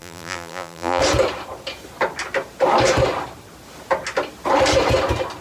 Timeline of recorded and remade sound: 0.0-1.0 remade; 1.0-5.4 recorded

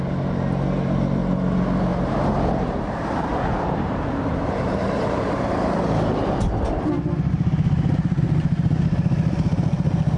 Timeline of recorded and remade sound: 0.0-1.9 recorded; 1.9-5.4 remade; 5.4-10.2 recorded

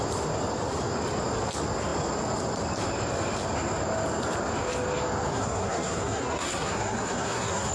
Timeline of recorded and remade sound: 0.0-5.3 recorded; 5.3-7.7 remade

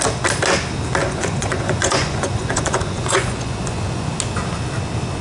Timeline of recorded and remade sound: 0.0-1.0 recorded; 1.0-4.1 remade; 4.1-5.2 recorded

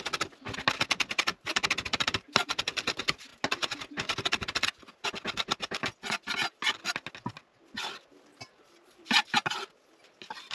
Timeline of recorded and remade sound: 0.0-1.3 recorded; 1.3-2.6 remade; 2.6-8.3 recorded; 8.3-9.7 remade; 9.7-10.5 recorded

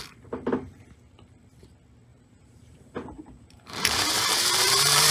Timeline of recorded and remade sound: 0.0-2.1 recorded; 2.1-5.1 remade

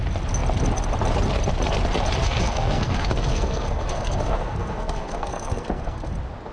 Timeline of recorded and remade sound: 0.0-2.2 recorded; 2.2-6.1 remade; 6.1-6.5 recorded